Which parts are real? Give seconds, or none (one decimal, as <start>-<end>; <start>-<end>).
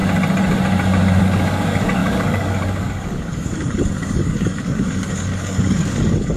0.0-1.2